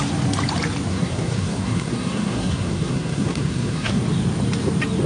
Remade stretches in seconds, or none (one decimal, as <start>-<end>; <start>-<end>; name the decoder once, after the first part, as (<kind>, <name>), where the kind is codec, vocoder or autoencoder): 0.9-4.0 (codec, SNAC)